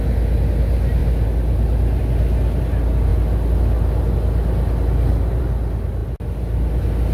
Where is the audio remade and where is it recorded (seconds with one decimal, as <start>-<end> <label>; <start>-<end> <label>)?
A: 0.0-7.1 recorded

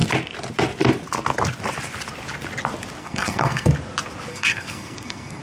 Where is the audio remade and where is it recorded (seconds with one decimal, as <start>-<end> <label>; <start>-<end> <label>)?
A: 0.0-3.0 recorded; 3.0-3.7 remade; 3.7-4.3 recorded; 4.3-5.4 remade